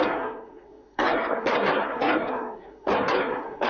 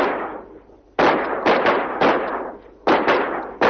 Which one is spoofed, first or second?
first